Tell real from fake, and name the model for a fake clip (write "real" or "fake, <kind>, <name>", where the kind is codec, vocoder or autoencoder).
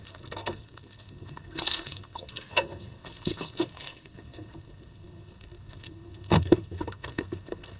fake, codec, SNAC